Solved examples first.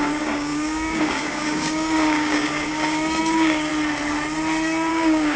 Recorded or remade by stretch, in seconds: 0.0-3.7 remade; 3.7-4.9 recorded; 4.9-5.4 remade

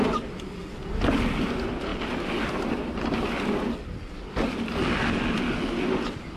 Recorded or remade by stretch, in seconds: 0.0-6.4 recorded

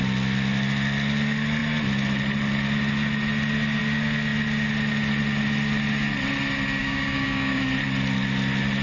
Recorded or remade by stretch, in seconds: 0.0-6.8 recorded; 6.8-7.6 remade; 7.6-8.8 recorded

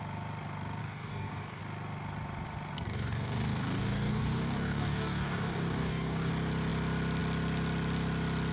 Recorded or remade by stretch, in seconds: 0.0-0.8 recorded; 0.8-1.6 remade; 1.6-2.9 recorded; 2.9-6.3 remade; 6.3-8.5 recorded

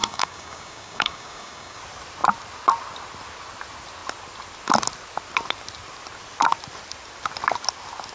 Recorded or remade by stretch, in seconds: 0.0-1.8 remade; 1.8-8.1 recorded

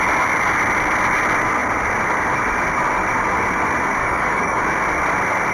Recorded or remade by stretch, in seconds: 0.0-4.0 recorded; 4.0-4.6 remade; 4.6-5.5 recorded